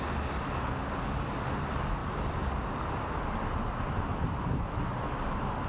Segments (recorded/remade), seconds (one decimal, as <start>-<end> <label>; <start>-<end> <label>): 0.0-5.7 recorded